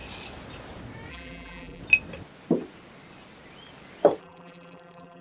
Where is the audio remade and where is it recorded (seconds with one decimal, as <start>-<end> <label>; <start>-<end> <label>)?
0.0-1.1 recorded; 1.1-1.8 remade; 1.8-4.2 recorded; 4.2-5.2 remade